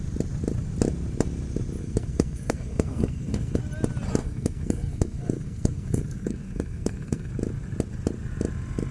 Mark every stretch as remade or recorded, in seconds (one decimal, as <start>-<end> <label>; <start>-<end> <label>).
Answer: 0.0-1.8 recorded; 1.8-3.6 remade; 3.6-4.2 recorded; 4.2-7.3 remade; 7.3-8.9 recorded